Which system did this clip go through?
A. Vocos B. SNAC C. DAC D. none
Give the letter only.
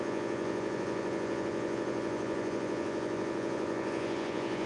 A